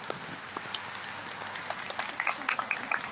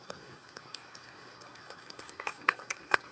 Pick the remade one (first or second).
second